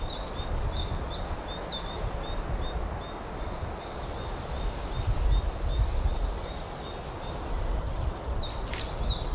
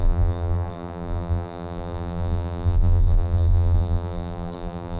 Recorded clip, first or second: first